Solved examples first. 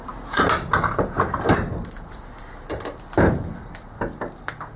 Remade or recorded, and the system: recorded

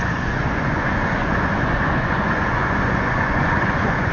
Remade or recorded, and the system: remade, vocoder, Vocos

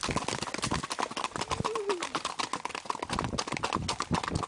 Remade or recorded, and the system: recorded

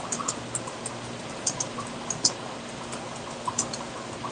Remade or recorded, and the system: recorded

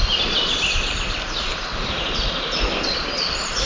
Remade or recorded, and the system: remade, vocoder, BigVGAN v2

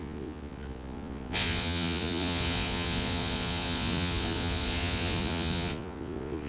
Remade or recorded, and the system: remade, vocoder, Vocos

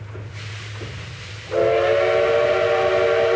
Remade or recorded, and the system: recorded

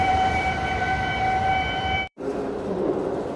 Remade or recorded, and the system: remade, vocoder, BigVGAN v2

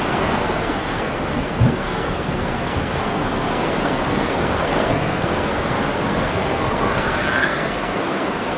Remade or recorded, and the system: remade, codec, SNAC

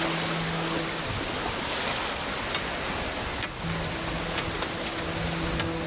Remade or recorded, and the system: recorded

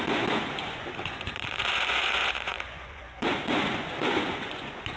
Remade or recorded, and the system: remade, vocoder, Vocos